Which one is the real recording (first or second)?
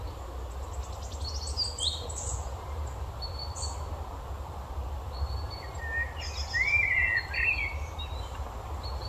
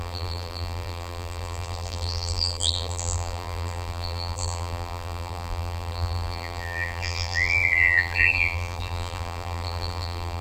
first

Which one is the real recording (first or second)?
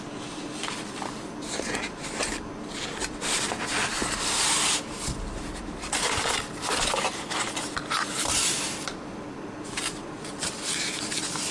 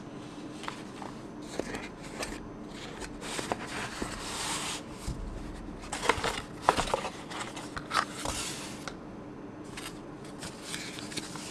second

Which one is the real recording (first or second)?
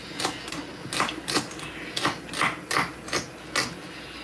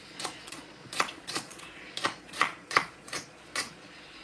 first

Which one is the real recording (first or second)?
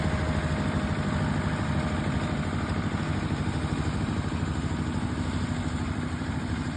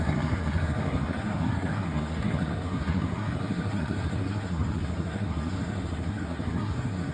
first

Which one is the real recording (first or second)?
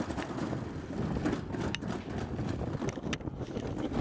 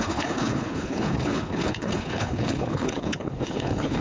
first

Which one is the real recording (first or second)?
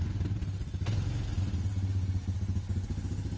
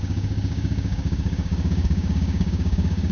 first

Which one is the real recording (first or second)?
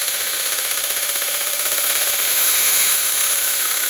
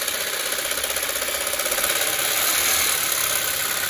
second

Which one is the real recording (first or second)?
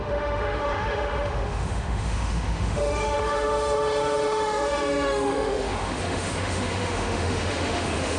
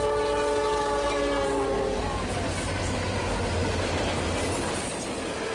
second